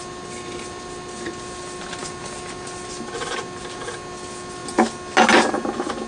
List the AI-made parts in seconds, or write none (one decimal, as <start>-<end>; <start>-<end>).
none